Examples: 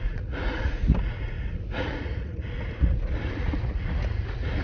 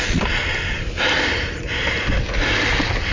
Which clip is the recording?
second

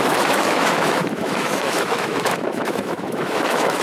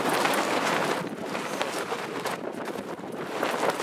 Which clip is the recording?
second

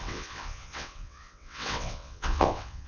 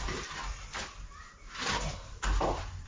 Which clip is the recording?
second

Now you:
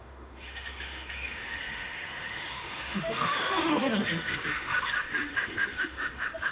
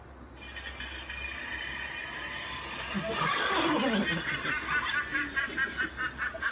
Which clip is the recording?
second